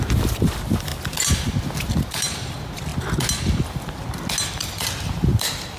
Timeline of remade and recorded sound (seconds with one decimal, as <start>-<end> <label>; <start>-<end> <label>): 0.0-0.9 remade; 0.9-1.9 recorded; 1.9-2.9 remade; 2.9-4.5 recorded; 4.5-5.8 remade